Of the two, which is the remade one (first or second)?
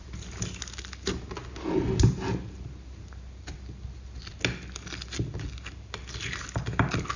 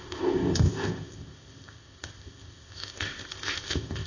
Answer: second